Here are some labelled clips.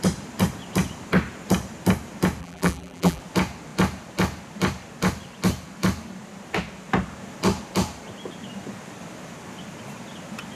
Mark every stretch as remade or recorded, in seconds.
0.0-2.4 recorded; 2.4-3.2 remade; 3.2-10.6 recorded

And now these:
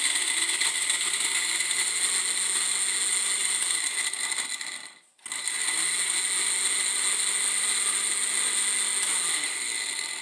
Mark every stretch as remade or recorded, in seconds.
0.0-10.2 recorded

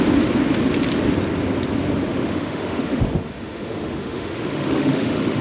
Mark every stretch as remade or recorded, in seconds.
0.0-2.1 recorded; 2.1-5.4 remade

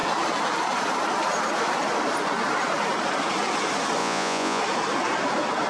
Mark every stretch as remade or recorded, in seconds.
0.0-4.0 recorded; 4.0-4.6 remade; 4.6-5.7 recorded

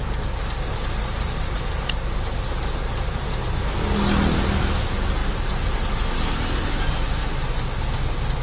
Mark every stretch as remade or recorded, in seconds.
0.0-8.4 recorded

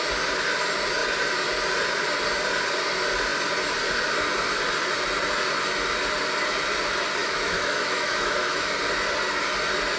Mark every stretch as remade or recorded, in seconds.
0.0-7.2 recorded; 7.2-8.7 remade; 8.7-10.0 recorded

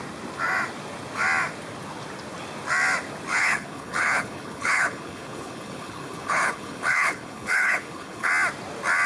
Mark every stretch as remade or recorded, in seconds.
0.0-3.3 recorded; 3.3-8.3 remade; 8.3-9.1 recorded